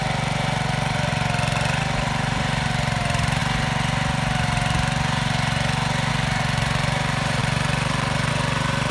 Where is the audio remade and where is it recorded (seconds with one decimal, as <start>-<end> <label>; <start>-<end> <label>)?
0.0-1.1 remade; 1.1-1.8 recorded; 1.8-3.4 remade; 3.4-6.1 recorded; 6.1-8.9 remade